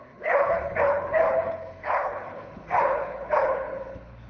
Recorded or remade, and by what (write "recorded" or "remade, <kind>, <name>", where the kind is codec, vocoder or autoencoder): remade, codec, HILCodec